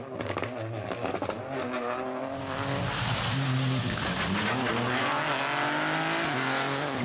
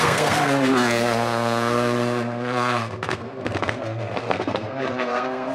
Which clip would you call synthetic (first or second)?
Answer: second